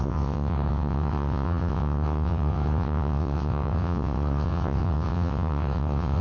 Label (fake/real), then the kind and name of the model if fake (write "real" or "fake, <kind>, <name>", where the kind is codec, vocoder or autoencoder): fake, vocoder, WaveNeXt